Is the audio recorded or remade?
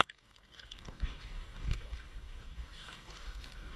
remade